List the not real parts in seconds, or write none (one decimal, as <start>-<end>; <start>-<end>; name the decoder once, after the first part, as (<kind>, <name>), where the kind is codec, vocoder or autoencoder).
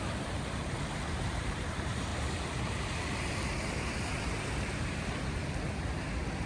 0.0-2.1 (vocoder, BigVGAN v2); 4.2-5.4